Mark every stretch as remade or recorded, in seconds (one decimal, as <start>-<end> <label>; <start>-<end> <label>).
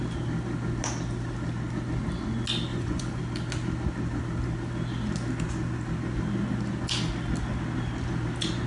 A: 0.0-2.7 recorded; 2.7-3.2 remade; 3.2-8.7 recorded